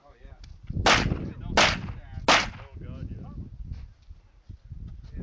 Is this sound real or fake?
real